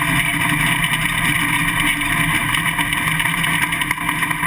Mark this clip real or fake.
real